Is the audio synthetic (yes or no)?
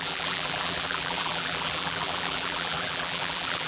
yes